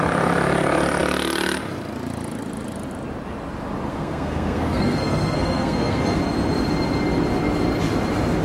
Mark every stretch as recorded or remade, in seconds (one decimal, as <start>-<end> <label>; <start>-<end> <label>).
0.0-3.9 recorded; 3.9-6.2 remade; 6.2-8.4 recorded